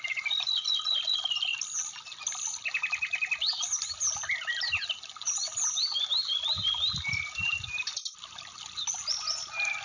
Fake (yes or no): no